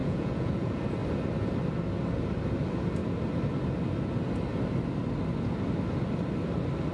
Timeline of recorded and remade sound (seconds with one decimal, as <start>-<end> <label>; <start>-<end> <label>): 0.0-0.8 remade; 0.8-6.9 recorded